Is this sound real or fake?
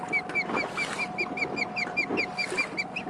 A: real